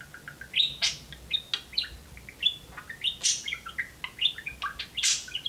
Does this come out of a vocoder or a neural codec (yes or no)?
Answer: no